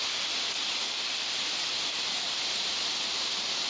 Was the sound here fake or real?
real